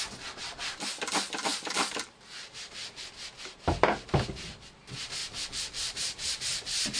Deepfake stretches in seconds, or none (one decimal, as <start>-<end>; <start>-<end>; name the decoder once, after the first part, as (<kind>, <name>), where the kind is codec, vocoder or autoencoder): 1.5-3.1 (vocoder, BigVGAN v2); 5.2-7.0